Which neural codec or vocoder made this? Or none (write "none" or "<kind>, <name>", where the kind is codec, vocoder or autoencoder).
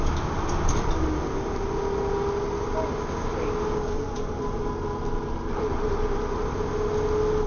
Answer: none